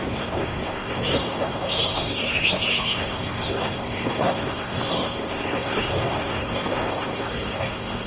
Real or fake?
fake